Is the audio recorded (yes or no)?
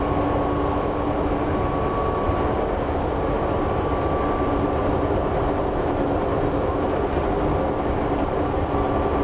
yes